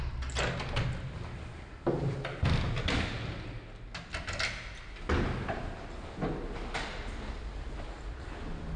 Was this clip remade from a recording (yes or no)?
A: no